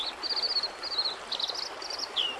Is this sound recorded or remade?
recorded